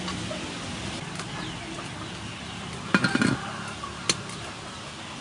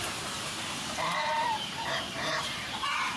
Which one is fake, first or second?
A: second